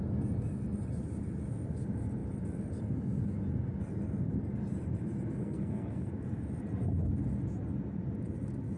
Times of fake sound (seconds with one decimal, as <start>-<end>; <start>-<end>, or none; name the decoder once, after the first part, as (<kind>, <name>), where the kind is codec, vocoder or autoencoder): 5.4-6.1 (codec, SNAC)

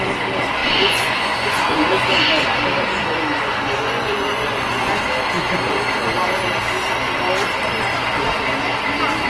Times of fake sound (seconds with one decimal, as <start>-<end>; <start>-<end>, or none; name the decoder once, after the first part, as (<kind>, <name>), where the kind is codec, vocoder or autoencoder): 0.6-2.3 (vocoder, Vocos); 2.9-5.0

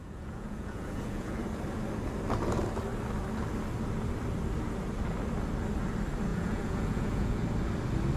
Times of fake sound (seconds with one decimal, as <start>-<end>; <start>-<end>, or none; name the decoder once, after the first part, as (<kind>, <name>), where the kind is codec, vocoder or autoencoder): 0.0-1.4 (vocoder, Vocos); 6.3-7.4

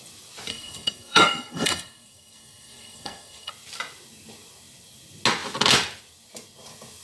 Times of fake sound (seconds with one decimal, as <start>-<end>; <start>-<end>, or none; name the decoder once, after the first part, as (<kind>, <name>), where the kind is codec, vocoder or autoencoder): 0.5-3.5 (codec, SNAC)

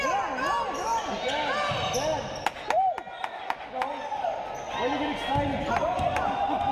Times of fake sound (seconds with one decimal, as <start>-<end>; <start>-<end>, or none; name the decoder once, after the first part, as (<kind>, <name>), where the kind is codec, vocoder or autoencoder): none

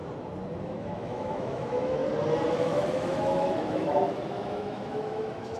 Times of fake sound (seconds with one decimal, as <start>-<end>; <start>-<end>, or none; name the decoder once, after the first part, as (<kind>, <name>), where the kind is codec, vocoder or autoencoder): 0.6-2.0 (autoencoder, DAC-VAE); 2.5-5.6